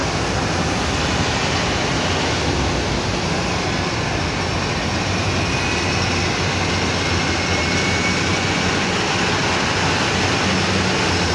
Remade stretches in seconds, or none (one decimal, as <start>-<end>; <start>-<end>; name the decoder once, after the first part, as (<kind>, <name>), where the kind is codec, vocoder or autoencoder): 8.3-8.9 (vocoder, Vocos)